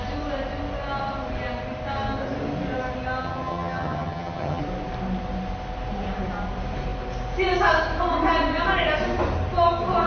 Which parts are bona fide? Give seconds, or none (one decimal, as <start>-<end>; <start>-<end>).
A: 0.0-3.2; 4.6-10.1